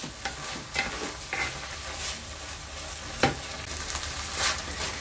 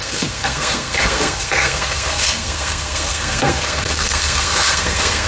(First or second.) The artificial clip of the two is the second